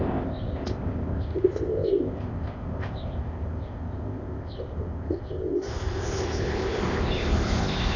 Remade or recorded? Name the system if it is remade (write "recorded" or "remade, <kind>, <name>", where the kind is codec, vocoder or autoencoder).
remade, codec, ZipCodec